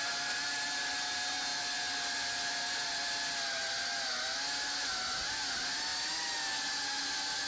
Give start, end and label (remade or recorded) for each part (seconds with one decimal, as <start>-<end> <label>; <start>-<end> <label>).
0.0-7.5 recorded